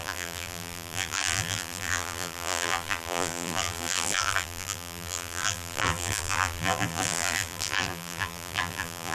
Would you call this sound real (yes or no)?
no